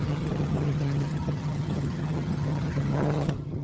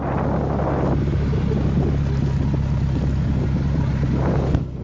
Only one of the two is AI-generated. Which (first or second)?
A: first